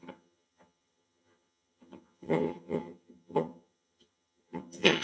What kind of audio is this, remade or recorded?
remade